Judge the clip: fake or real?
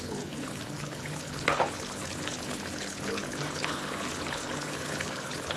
fake